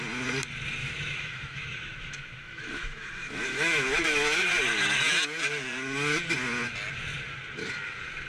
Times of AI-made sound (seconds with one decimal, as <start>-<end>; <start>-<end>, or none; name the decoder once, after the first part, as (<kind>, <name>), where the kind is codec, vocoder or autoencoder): 0.8-4.5 (autoencoder, DAC-VAE)